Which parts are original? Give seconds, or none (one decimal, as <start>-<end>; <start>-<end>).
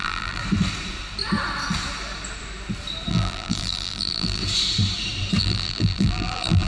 0.4-3.1; 4.4-5.4